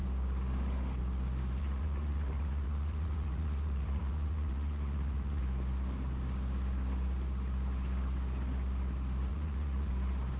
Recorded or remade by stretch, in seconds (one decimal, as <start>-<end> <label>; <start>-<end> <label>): 0.0-1.6 recorded; 1.6-5.4 remade; 5.4-9.3 recorded; 9.3-9.9 remade; 9.9-10.4 recorded